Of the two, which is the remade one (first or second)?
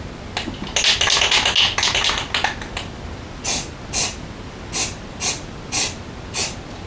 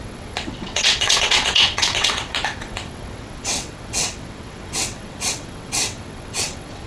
second